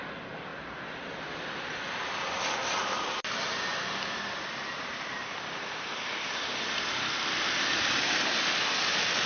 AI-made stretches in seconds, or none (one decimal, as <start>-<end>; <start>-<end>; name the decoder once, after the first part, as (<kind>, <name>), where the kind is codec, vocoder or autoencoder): 0.5-2.0 (vocoder, BigVGAN v2); 4.9-6.5